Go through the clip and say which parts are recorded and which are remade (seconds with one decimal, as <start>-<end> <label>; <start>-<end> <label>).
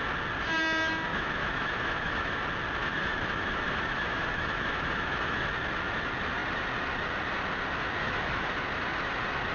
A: 0.0-1.1 recorded; 1.1-2.3 remade; 2.3-2.8 recorded; 2.8-5.5 remade; 5.5-8.0 recorded; 8.0-8.5 remade; 8.5-9.5 recorded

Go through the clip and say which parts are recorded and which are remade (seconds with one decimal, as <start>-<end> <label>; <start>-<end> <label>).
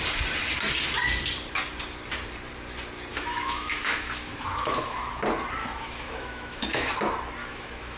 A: 0.0-3.1 recorded; 3.1-5.1 remade; 5.1-5.6 recorded; 5.6-6.9 remade; 6.9-7.4 recorded; 7.4-8.0 remade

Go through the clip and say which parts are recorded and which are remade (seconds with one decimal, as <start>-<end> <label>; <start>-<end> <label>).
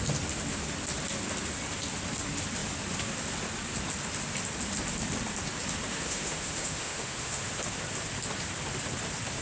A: 0.0-5.9 recorded; 5.9-7.5 remade; 7.5-9.4 recorded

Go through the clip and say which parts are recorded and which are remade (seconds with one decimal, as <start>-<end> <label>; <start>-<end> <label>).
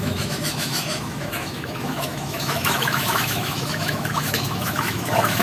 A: 0.0-5.4 remade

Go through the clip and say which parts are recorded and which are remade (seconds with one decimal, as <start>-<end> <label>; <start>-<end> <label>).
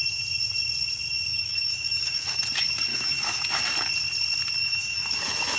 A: 0.0-1.3 recorded; 1.3-2.4 remade; 2.4-2.9 recorded; 2.9-3.4 remade; 3.4-4.6 recorded; 4.6-5.6 remade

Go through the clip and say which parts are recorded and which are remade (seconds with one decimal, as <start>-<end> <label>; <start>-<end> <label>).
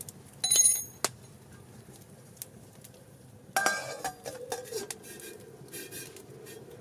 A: 0.0-6.8 recorded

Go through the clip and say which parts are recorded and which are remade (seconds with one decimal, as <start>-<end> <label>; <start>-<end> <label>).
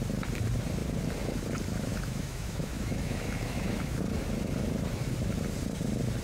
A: 0.0-1.9 recorded; 1.9-4.0 remade; 4.0-6.2 recorded